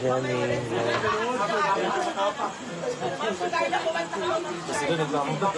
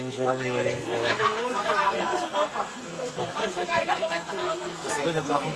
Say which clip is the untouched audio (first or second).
first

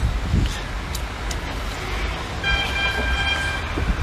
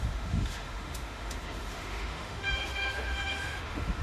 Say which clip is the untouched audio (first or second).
first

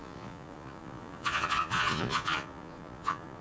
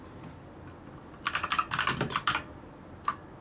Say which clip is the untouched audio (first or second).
second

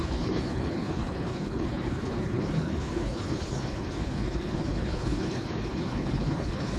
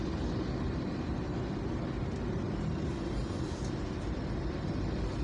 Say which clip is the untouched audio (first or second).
second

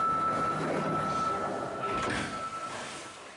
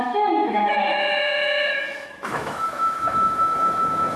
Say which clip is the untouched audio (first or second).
first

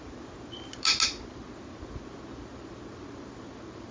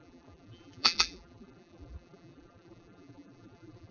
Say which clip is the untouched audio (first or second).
first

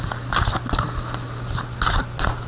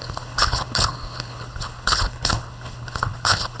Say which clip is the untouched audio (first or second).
first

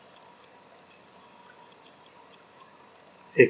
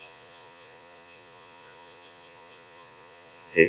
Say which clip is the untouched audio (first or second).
first